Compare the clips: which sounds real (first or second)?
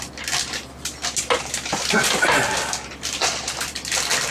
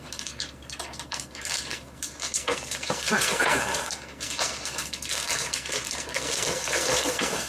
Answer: first